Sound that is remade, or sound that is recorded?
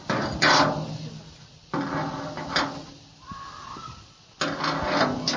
recorded